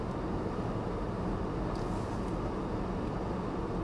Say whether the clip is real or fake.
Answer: real